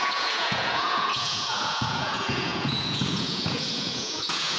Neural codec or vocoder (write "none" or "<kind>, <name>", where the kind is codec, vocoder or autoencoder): vocoder, Vocos